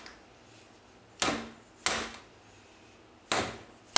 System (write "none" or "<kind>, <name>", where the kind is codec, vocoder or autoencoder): none